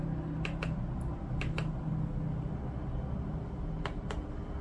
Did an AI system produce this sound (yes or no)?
no